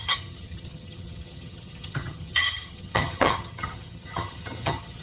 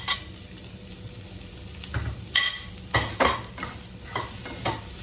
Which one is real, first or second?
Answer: second